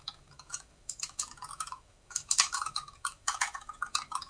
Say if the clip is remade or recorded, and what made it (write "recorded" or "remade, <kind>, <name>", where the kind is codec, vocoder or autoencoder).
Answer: remade, autoencoder, DAC-VAE